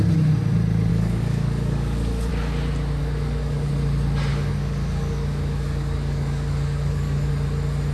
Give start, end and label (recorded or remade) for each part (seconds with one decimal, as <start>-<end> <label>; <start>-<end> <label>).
0.0-0.9 recorded; 0.9-2.3 remade; 2.3-3.0 recorded; 3.0-3.7 remade; 3.7-4.3 recorded; 4.3-7.3 remade; 7.3-7.9 recorded